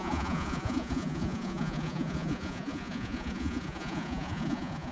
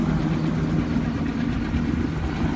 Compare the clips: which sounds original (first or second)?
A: second